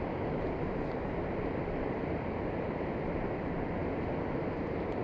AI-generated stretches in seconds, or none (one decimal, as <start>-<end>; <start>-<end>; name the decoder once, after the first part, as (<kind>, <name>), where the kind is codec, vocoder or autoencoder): none